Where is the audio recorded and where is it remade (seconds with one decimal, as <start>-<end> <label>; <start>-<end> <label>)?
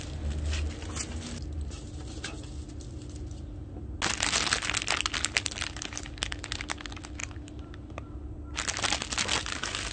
0.0-9.9 recorded